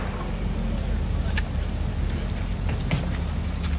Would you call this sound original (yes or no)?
yes